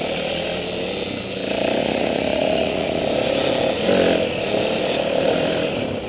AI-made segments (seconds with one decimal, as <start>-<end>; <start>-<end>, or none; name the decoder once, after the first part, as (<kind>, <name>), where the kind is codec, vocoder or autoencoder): 1.8-3.0 (vocoder, Vocos)